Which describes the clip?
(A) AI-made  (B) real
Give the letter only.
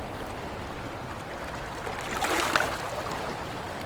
B